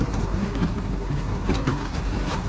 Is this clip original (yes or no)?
no